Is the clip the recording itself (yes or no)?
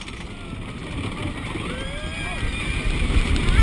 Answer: yes